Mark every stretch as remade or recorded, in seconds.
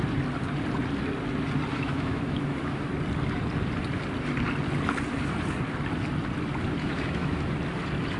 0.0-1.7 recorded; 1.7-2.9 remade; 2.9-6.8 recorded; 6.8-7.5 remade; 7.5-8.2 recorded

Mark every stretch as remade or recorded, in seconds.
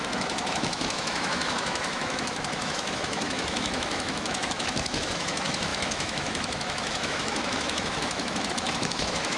0.0-9.4 remade